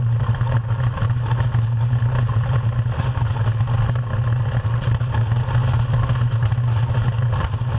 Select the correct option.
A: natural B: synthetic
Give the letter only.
A